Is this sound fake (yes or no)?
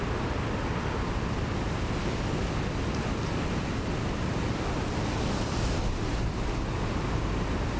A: no